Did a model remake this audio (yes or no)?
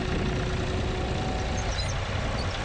no